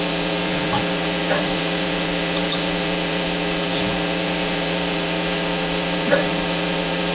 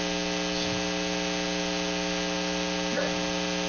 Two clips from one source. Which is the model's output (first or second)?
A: first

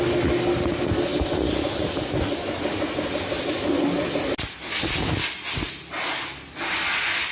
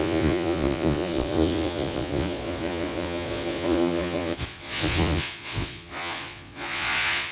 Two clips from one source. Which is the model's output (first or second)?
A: second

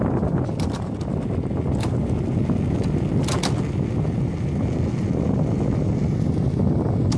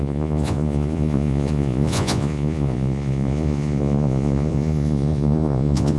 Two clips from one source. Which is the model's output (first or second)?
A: second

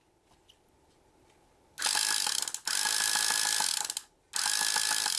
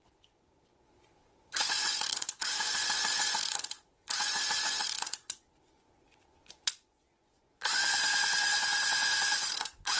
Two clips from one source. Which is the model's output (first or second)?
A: second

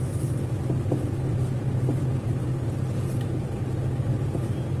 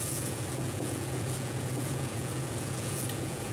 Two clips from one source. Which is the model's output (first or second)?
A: second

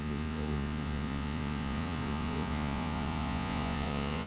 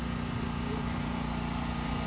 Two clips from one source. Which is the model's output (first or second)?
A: first